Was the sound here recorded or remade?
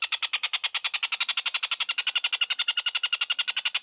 recorded